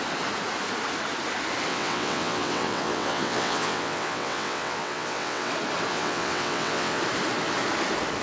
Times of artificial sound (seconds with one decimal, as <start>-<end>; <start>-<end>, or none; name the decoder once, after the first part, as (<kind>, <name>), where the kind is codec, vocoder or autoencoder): 1.7-5.5 (vocoder, WaveNeXt); 5.9-7.0